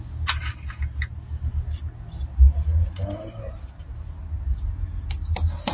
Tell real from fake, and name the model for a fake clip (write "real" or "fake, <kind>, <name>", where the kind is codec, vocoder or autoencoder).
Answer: real